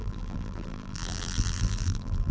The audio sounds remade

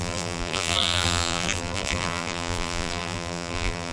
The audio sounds remade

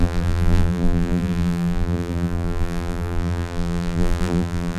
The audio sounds remade